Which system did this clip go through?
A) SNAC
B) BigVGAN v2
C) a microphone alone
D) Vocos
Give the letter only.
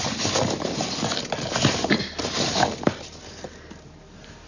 C